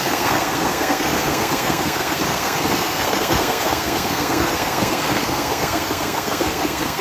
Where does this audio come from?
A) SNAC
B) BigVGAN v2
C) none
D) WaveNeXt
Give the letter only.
A